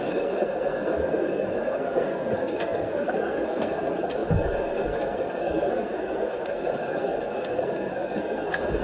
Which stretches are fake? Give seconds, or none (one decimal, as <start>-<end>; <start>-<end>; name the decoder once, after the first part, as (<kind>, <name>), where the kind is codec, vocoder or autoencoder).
0.0-8.8 (codec, SNAC)